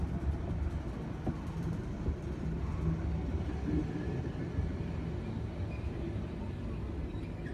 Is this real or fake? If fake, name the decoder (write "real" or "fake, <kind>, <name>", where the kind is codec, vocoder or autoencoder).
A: real